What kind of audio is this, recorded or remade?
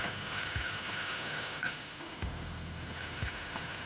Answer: remade